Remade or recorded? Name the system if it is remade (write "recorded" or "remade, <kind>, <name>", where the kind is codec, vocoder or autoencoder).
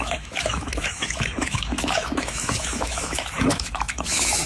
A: remade, autoencoder, DAC-VAE